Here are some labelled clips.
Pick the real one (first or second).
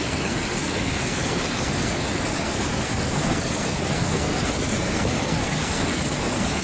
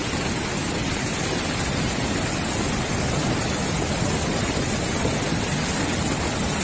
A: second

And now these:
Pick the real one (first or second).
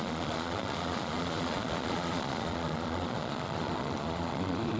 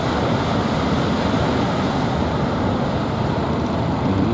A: second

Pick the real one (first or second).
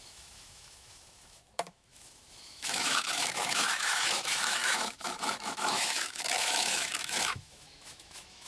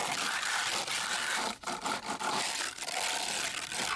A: second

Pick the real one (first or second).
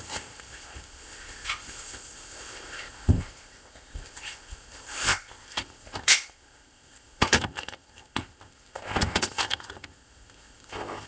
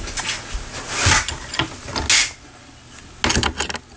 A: second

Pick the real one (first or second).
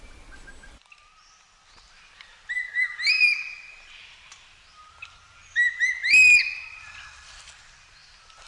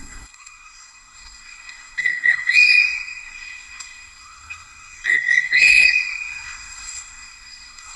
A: first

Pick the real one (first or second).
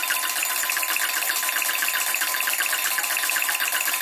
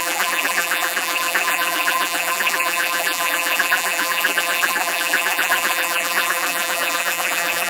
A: first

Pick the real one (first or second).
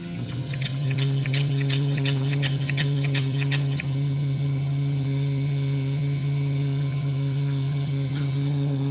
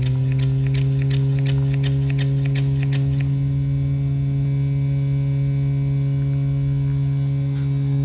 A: second